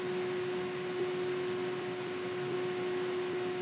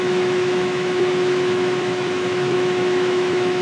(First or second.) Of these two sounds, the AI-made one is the second